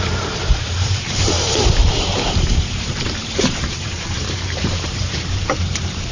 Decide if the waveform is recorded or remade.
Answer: remade